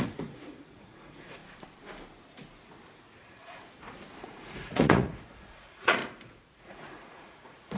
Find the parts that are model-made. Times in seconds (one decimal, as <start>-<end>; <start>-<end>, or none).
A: 0.0-1.4; 3.2-3.6; 4.2-6.0; 6.6-7.8